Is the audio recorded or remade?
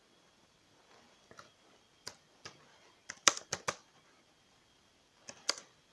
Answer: recorded